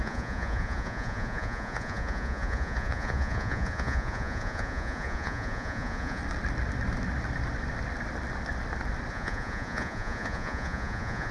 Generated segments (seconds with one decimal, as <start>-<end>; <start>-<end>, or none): 0.0-6.2; 9.1-11.3